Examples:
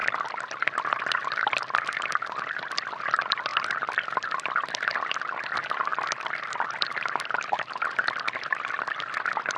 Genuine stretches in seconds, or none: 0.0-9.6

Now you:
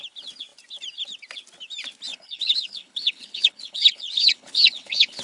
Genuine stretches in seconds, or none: 0.0-2.1

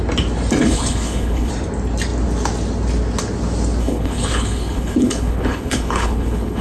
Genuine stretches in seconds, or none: 0.0-0.6; 1.5-3.8

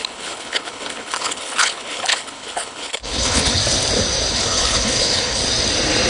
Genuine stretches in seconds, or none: 3.6-4.3; 5.4-6.1